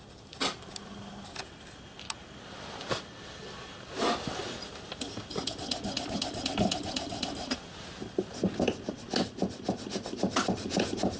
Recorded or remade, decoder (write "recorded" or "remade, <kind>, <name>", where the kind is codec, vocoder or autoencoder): recorded